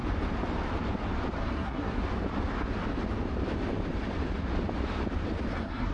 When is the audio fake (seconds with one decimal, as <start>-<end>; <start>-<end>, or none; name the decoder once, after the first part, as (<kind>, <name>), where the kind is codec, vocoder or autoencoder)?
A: 1.4-2.0 (codec, SNAC); 5.5-5.9